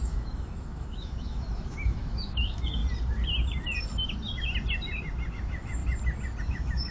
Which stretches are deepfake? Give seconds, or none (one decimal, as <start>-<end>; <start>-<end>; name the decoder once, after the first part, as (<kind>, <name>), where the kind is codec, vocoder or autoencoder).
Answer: 0.0-2.8 (autoencoder, DAC-VAE); 5.3-5.8; 6.4-6.9